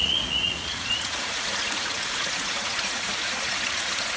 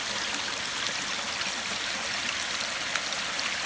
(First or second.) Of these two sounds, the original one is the second